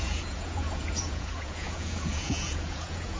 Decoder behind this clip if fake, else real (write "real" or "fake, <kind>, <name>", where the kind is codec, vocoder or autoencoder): fake, vocoder, Vocos